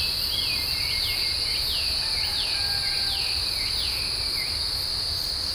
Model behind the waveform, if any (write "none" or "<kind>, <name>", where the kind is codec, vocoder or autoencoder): none